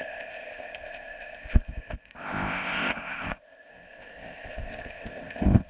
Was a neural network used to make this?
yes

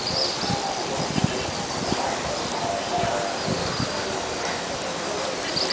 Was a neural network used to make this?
no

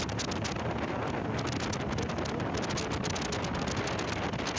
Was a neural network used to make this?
no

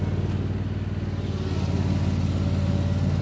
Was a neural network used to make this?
no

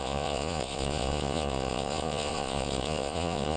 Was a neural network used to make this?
yes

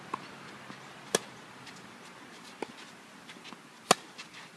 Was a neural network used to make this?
no